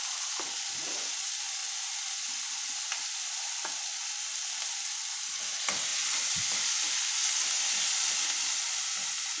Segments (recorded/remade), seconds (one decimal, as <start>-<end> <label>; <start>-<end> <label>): 0.0-9.4 recorded